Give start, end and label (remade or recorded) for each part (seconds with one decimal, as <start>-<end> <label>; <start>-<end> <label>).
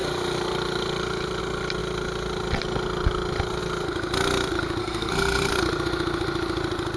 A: 0.0-4.8 recorded; 4.8-5.5 remade; 5.5-7.0 recorded